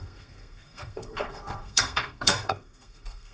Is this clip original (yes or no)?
no